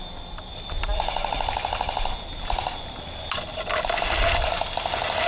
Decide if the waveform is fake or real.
fake